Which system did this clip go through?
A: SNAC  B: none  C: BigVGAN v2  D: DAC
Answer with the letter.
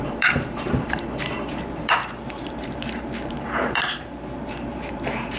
C